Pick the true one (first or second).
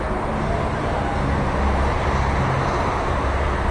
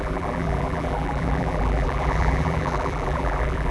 first